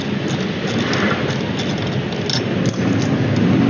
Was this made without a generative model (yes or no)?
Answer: yes